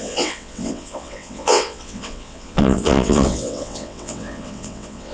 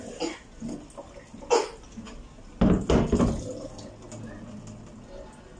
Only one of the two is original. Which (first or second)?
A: second